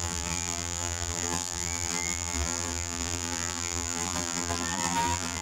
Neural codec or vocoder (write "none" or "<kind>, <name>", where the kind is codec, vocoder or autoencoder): vocoder, BigVGAN v2